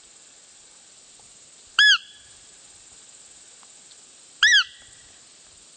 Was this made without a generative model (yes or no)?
yes